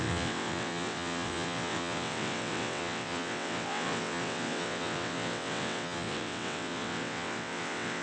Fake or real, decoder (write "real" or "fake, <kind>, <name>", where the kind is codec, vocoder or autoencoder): fake, vocoder, WaveNeXt